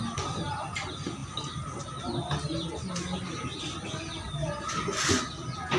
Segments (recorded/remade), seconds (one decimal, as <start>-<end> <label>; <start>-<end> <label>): 0.0-5.8 recorded